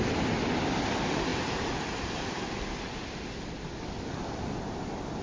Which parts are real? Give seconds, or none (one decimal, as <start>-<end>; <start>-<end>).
0.0-5.2